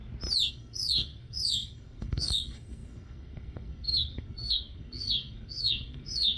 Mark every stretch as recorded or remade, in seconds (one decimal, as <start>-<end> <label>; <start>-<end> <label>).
0.0-0.5 recorded; 0.5-6.4 remade